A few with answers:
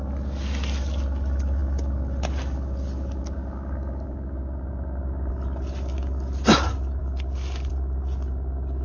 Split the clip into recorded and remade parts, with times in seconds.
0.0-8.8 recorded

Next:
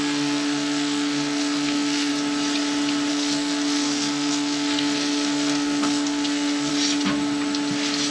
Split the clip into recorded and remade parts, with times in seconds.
0.0-2.1 remade; 2.1-3.1 recorded; 3.1-6.7 remade; 6.7-8.1 recorded